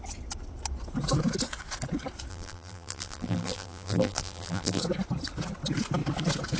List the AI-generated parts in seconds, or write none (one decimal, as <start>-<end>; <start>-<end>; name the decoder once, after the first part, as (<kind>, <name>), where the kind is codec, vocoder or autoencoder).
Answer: 2.3-4.8 (vocoder, BigVGAN v2)